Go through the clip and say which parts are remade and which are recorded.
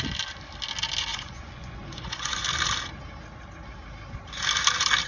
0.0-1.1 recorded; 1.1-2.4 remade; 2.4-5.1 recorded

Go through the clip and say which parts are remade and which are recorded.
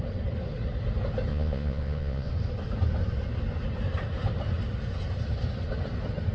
0.0-1.3 recorded; 1.3-2.3 remade; 2.3-6.3 recorded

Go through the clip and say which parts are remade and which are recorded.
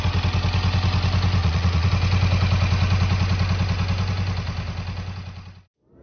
0.0-1.4 recorded; 1.4-1.9 remade; 1.9-6.0 recorded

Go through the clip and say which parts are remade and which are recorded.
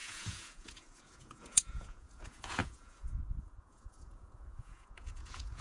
0.0-5.6 remade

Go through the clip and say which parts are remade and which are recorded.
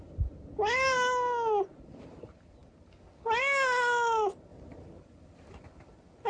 0.0-6.3 recorded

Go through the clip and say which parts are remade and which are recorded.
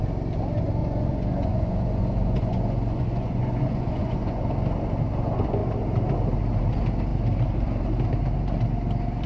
0.0-0.8 recorded; 0.8-4.4 remade; 4.4-9.3 recorded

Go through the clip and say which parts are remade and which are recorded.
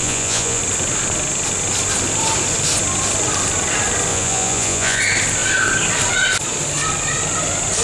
0.0-0.6 remade; 0.6-4.1 recorded; 4.1-5.0 remade; 5.0-7.8 recorded